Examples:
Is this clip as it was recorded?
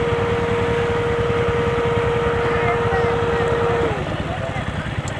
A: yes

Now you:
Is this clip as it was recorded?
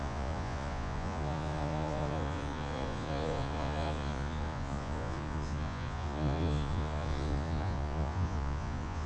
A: no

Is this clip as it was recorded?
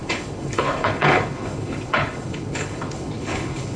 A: no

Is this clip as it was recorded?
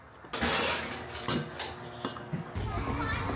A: yes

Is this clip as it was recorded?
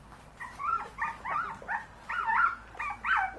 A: yes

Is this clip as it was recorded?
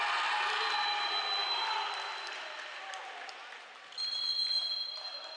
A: yes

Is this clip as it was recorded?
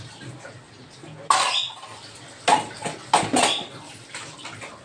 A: yes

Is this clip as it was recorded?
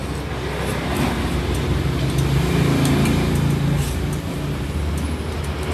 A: yes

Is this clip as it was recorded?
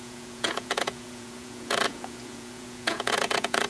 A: no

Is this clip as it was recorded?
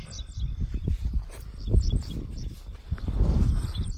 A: yes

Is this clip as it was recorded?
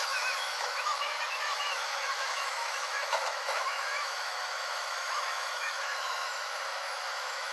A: no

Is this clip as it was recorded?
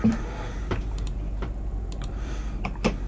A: no